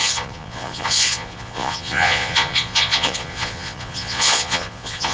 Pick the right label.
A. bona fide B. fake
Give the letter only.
B